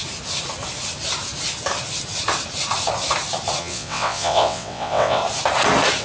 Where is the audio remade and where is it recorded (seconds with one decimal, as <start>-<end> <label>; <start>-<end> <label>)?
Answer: 0.0-3.6 recorded; 3.6-5.2 remade; 5.2-6.0 recorded